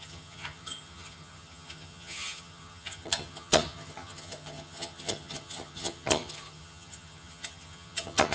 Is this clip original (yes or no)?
no